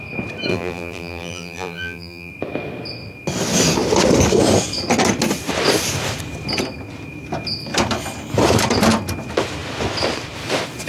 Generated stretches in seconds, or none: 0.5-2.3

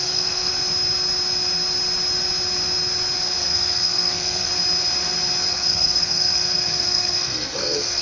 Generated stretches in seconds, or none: 0.0-0.5; 3.4-4.5; 5.5-8.0